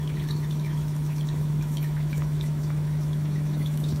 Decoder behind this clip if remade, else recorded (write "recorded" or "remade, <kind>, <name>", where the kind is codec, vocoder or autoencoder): remade, autoencoder, DAC-VAE